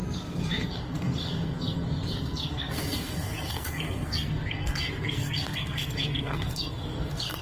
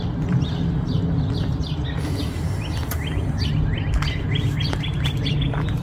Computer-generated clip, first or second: first